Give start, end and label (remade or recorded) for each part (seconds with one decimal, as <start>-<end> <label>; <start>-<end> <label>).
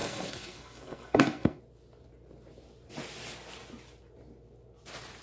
0.0-1.6 remade; 1.6-5.2 recorded